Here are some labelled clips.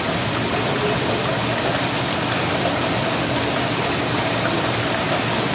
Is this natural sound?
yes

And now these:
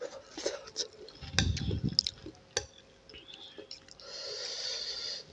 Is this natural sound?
yes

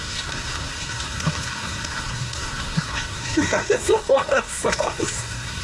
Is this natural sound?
no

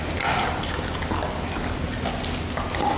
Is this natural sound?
yes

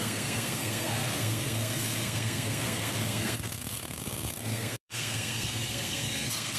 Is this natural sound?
no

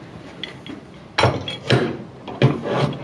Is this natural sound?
yes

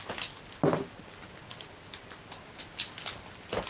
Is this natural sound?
yes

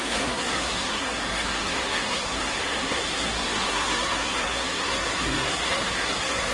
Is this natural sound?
no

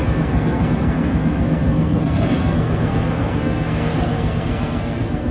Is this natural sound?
no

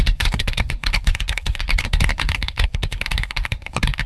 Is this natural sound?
no